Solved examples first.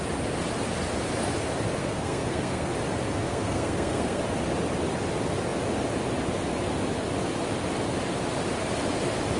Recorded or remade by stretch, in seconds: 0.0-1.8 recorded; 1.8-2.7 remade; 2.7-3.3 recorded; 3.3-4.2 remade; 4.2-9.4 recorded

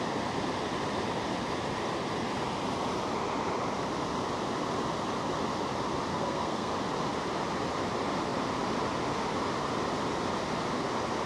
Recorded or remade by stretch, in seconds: 0.0-6.1 recorded; 6.1-6.7 remade; 6.7-11.3 recorded